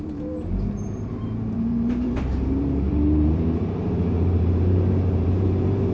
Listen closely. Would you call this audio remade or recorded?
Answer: remade